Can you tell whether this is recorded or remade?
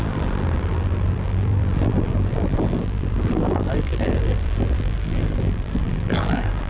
remade